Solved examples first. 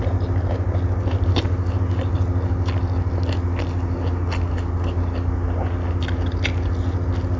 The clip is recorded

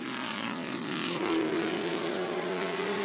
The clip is remade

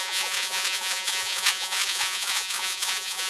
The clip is remade